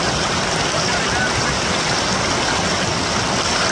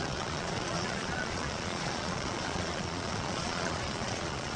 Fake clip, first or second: second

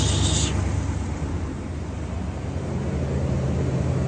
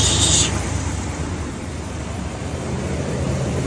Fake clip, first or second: second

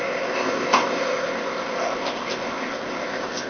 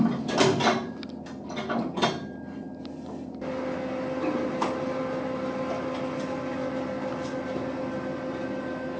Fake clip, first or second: first